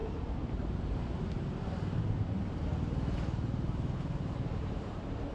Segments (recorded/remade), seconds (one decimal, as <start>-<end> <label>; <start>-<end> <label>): 0.0-2.0 remade; 2.0-2.7 recorded; 2.7-5.3 remade

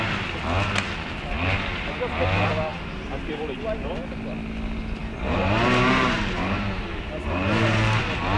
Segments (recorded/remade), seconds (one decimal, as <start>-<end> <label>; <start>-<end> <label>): 0.0-2.7 recorded; 2.7-3.6 remade; 3.6-5.0 recorded; 5.0-8.0 remade; 8.0-8.4 recorded

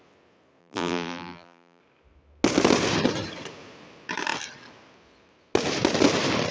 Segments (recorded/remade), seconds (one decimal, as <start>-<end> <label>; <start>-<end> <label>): 0.0-0.6 recorded; 0.6-1.8 remade; 1.8-6.5 recorded